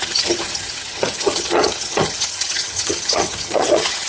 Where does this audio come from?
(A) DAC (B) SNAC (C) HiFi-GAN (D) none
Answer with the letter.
C